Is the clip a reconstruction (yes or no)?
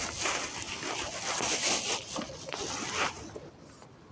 no